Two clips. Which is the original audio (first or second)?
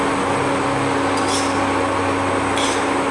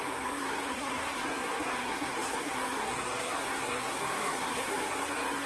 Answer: first